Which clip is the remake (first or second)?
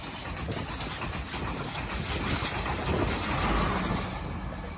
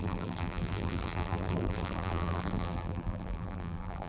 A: second